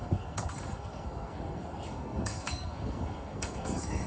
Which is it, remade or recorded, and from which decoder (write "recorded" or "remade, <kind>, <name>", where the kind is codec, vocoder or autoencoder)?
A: remade, codec, SNAC